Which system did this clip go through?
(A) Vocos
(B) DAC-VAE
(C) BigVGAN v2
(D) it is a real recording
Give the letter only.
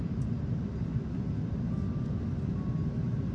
D